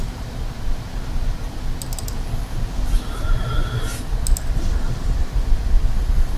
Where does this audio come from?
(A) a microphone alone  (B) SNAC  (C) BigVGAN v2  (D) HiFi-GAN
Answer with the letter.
A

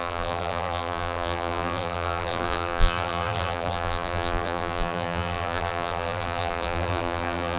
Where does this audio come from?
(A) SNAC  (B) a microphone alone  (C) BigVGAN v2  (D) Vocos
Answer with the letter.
C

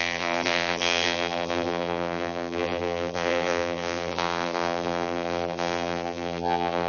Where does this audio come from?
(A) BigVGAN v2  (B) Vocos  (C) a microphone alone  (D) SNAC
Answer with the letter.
A